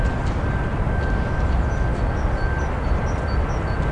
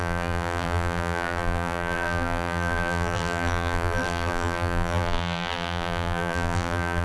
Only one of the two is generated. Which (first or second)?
second